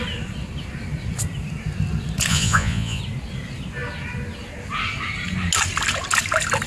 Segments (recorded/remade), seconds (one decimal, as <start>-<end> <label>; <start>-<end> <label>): 0.0-2.3 recorded; 2.3-3.0 remade; 3.0-6.7 recorded